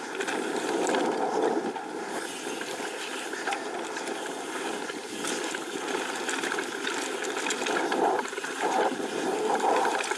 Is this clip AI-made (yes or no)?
no